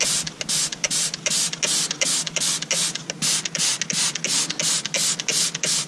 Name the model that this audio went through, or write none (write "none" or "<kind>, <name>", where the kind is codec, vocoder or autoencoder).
none